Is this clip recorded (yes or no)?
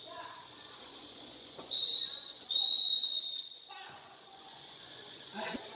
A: no